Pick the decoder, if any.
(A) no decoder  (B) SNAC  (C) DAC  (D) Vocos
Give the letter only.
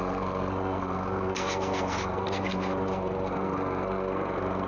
B